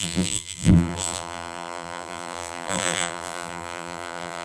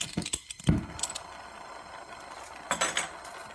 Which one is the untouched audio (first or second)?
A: second